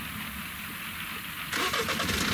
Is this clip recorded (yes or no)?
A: yes